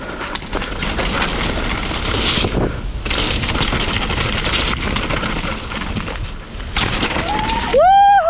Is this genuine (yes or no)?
yes